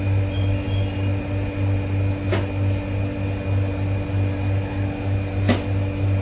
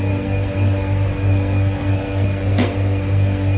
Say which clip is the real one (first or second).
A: first